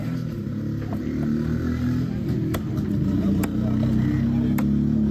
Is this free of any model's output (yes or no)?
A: yes